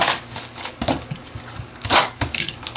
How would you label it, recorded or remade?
remade